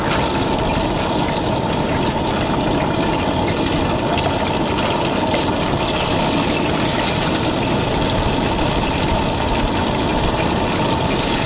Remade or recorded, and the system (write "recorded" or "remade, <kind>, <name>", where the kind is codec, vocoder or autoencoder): recorded